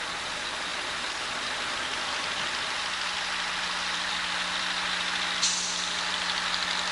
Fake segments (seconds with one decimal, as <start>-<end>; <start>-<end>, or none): none